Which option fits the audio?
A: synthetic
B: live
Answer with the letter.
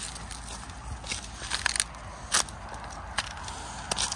B